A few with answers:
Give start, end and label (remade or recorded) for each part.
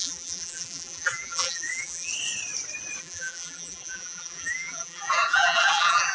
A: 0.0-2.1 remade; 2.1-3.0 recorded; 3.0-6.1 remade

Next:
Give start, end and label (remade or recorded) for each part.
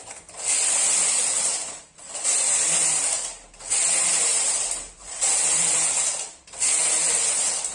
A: 0.0-4.3 recorded; 4.3-5.4 remade; 5.4-7.7 recorded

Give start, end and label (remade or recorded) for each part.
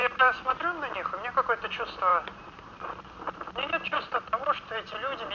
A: 0.0-0.6 remade; 0.6-2.1 recorded; 2.1-5.3 remade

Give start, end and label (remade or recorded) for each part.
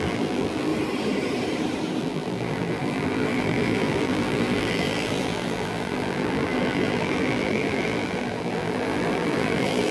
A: 0.0-0.7 remade; 0.7-2.0 recorded; 2.0-9.9 remade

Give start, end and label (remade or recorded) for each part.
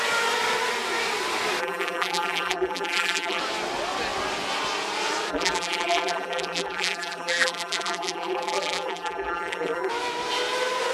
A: 0.0-1.6 recorded; 1.6-3.4 remade; 3.4-5.3 recorded; 5.3-9.9 remade; 9.9-10.9 recorded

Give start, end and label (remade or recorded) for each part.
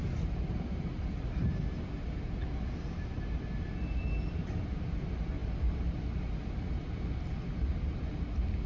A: 0.0-1.4 remade; 1.4-8.7 recorded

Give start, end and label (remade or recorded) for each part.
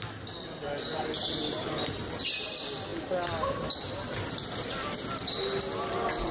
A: 0.0-6.3 recorded